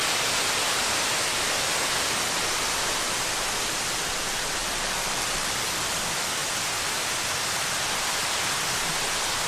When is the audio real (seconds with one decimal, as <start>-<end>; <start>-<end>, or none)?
0.0-4.6; 6.0-9.5